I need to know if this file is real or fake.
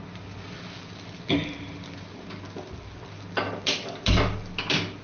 real